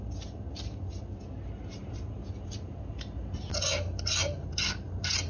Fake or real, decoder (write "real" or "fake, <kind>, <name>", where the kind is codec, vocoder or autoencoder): real